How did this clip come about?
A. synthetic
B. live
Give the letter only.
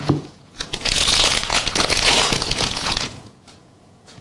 A